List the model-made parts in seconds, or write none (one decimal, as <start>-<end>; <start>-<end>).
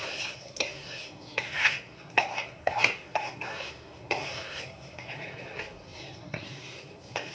0.0-7.3